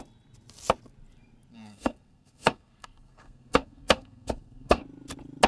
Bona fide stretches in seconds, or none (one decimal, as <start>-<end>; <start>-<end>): 0.0-1.5; 4.8-5.5